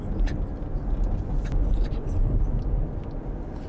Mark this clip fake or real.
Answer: real